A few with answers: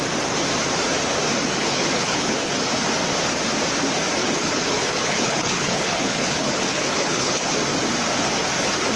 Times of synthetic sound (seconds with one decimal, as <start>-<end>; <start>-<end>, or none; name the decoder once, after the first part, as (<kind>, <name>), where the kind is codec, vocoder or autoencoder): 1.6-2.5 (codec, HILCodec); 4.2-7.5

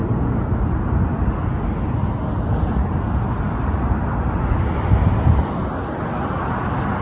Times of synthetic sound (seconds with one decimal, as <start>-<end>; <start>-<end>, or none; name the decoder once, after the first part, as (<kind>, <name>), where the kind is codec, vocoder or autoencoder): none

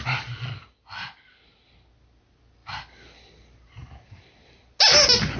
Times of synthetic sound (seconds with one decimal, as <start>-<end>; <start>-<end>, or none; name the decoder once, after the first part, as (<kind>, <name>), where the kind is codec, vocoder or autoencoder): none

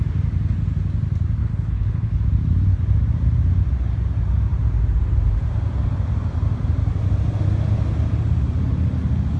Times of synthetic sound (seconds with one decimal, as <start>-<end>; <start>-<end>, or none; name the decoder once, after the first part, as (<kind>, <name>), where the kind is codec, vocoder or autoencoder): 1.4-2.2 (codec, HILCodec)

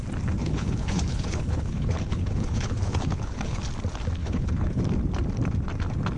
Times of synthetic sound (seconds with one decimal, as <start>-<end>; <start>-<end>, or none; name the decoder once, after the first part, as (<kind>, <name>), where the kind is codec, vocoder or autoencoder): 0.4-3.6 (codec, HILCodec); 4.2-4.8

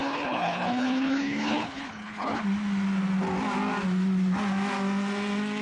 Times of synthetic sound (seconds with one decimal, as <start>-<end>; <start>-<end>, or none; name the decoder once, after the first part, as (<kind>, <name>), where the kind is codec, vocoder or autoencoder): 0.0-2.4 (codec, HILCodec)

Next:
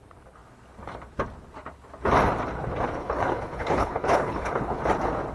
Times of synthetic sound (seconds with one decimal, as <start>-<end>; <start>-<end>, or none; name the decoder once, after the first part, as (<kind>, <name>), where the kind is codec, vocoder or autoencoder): 3.0-4.8 (codec, HILCodec)

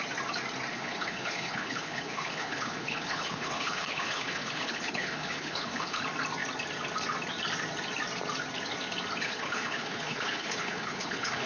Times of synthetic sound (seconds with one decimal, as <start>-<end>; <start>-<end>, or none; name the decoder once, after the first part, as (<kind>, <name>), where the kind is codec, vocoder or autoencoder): 0.7-6.0 (codec, HILCodec); 9.2-11.5